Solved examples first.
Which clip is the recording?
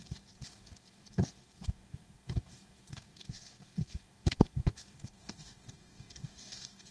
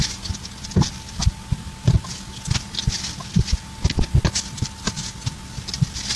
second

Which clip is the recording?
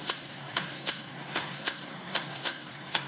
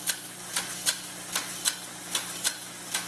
second